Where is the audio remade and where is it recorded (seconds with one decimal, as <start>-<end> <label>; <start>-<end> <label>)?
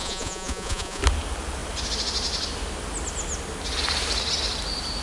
0.0-1.0 remade; 1.0-5.0 recorded